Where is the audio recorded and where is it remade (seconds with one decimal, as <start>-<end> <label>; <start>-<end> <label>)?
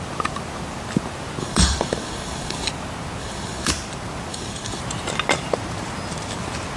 0.0-1.4 recorded; 1.4-2.7 remade; 2.7-3.2 recorded; 3.2-3.7 remade; 3.7-4.3 recorded; 4.3-4.8 remade; 4.8-6.8 recorded